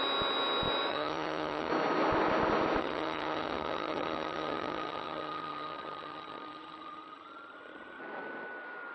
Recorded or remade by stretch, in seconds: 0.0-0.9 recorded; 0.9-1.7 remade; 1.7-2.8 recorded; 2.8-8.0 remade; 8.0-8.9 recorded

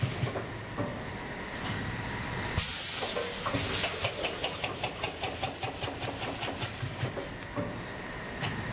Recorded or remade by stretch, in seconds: 0.0-0.9 recorded; 0.9-3.0 remade; 3.0-8.7 recorded

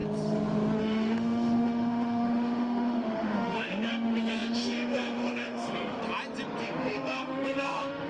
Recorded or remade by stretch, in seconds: 0.0-0.8 recorded; 0.8-6.0 remade; 6.0-6.6 recorded; 6.6-8.1 remade

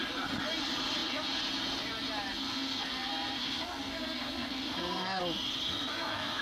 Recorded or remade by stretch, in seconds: 0.0-2.3 recorded; 2.3-5.2 remade; 5.2-5.7 recorded; 5.7-6.4 remade